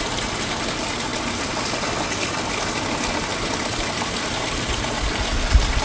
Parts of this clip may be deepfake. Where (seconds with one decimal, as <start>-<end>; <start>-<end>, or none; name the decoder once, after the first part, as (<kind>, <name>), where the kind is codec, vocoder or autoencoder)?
none